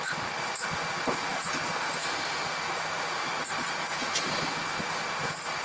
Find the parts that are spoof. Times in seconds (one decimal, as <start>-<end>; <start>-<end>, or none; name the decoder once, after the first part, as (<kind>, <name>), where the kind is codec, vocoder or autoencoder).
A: none